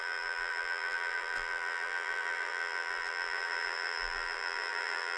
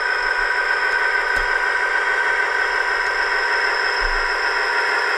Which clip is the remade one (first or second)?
first